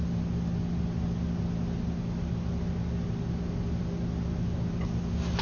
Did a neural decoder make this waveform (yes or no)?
no